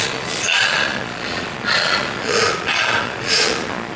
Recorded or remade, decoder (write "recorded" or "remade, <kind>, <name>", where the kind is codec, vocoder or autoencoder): remade, vocoder, Vocos